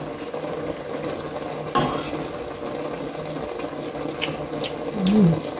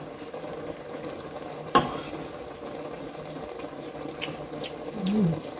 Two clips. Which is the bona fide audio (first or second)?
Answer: first